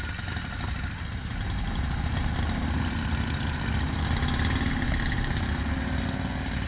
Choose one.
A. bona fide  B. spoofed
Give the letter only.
A